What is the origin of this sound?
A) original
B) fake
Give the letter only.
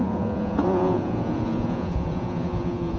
B